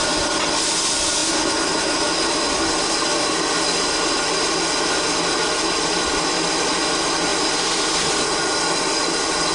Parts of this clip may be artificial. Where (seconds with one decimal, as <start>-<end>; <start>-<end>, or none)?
7.3-9.5